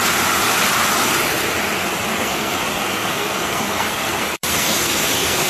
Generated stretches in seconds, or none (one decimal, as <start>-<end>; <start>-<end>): 2.1-5.5